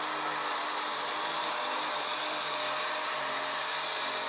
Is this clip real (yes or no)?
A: yes